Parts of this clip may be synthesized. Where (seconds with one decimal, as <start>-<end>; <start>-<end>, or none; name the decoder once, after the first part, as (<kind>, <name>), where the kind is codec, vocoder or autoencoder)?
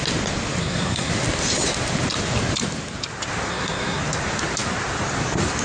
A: 0.6-1.1 (codec, SNAC); 3.5-4.0